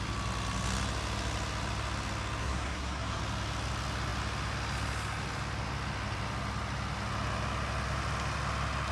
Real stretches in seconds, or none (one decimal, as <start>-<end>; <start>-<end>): 0.0-2.4; 3.2-8.9